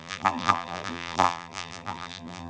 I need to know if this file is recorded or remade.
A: remade